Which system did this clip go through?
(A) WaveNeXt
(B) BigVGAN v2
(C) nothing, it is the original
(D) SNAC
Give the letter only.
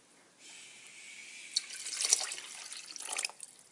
C